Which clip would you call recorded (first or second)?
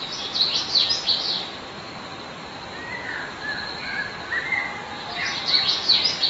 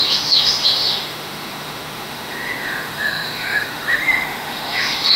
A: first